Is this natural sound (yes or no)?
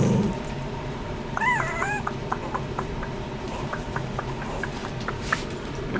no